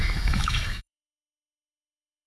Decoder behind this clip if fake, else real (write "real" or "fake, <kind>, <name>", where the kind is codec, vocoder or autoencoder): fake, autoencoder, DAC-VAE